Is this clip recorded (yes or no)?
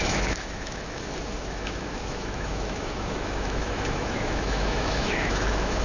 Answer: no